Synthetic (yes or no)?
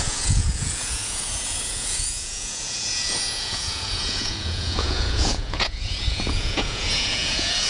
yes